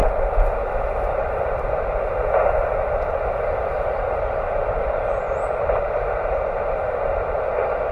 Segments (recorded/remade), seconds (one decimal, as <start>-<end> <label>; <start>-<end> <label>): 0.0-7.9 recorded